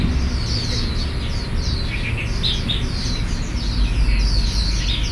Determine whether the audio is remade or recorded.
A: recorded